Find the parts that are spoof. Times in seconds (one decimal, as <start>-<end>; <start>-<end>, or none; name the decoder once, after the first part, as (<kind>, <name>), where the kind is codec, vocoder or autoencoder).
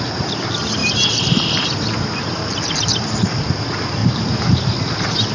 0.8-3.5 (vocoder, BigVGAN v2); 4.0-5.3